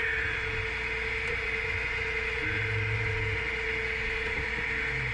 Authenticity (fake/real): real